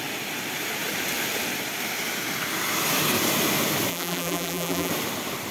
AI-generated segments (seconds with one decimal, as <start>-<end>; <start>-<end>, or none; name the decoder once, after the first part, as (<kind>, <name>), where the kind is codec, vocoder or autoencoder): 3.9-4.9 (vocoder, BigVGAN v2)